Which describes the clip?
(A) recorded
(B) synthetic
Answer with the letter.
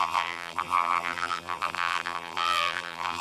B